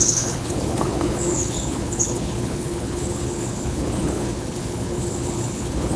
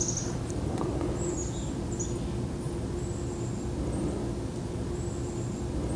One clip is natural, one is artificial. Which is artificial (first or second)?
first